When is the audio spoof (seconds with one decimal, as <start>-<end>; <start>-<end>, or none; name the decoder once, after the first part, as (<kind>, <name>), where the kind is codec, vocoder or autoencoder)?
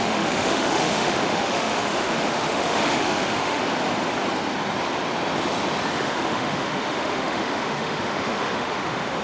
0.0-3.6 (autoencoder, DAC-VAE); 5.9-9.2